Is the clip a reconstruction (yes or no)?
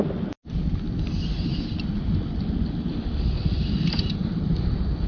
no